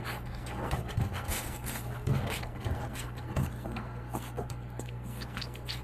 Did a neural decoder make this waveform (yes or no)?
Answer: yes